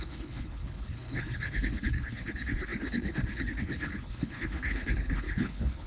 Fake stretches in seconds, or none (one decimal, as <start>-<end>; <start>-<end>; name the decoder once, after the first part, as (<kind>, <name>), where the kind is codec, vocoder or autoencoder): 0.0-5.9 (codec, HILCodec)